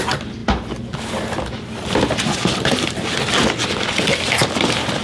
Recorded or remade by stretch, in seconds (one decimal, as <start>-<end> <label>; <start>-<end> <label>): 0.0-5.0 recorded